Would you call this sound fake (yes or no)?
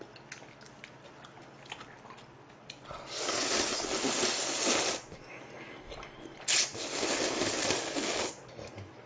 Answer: no